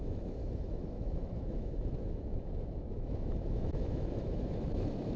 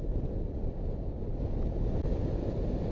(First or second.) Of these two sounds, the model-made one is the first